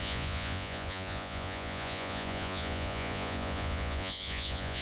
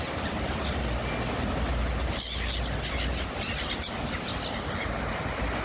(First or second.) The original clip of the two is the second